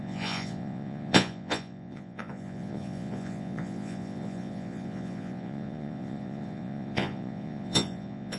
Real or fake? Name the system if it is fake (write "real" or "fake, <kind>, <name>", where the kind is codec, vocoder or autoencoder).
fake, vocoder, Vocos